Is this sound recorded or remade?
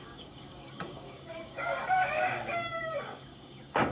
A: remade